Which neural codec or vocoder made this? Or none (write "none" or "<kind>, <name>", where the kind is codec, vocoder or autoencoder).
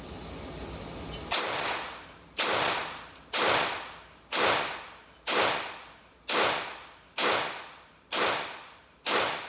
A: none